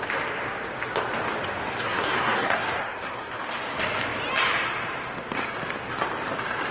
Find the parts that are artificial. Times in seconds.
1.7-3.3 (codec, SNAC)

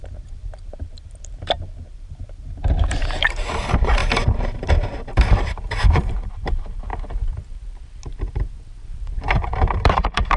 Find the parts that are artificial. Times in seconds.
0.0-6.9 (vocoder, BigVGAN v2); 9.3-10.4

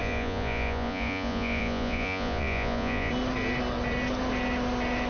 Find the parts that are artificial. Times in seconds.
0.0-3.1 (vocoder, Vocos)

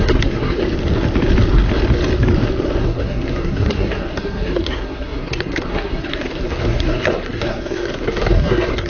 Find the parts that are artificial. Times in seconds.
0.0-0.6 (codec, SNAC); 2.8-8.9

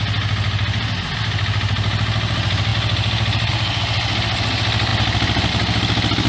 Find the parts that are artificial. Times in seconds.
none

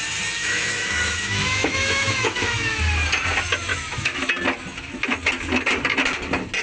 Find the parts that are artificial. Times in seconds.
0.4-2.8 (autoencoder, DAC-VAE); 3.7-4.3

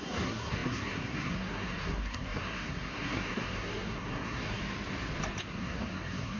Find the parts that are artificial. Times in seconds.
0.0-4.6 (codec, SNAC); 5.4-6.4